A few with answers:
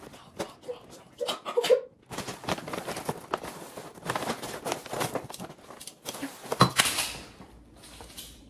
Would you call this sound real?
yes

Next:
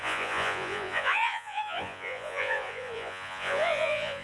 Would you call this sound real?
no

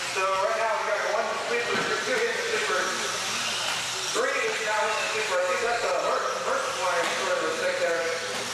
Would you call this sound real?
no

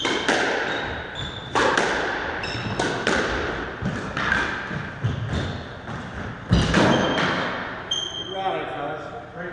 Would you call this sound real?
yes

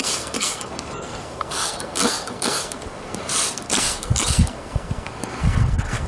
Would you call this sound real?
no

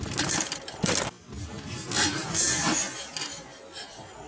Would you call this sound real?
yes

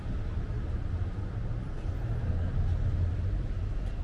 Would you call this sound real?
yes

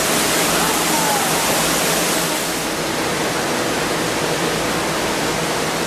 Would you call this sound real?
yes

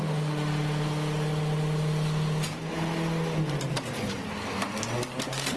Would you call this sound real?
yes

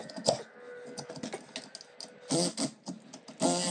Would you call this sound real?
yes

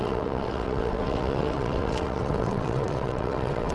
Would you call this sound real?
no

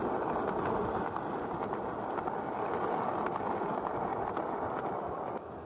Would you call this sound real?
yes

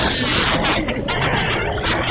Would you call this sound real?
yes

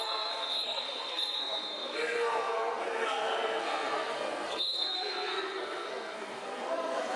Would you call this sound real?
no